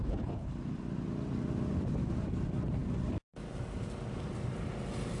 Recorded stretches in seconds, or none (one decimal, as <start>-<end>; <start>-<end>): 0.5-5.2